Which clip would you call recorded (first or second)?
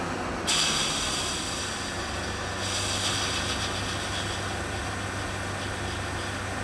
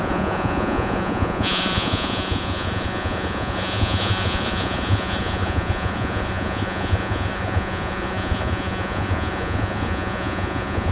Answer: first